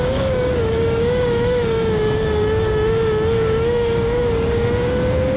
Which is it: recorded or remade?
remade